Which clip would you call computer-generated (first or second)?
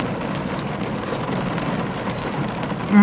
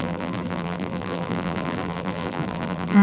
second